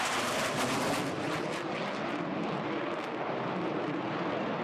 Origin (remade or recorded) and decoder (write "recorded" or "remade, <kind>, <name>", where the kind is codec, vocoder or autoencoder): recorded